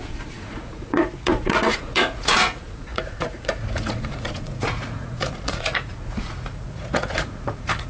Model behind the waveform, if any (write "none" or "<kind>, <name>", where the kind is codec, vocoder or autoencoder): vocoder, Vocos